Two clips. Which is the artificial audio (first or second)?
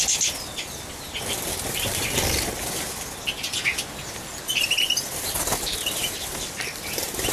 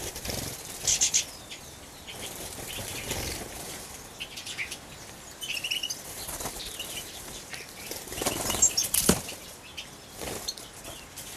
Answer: second